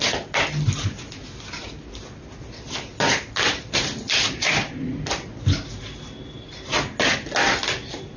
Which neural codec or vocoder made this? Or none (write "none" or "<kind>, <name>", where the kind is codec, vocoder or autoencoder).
none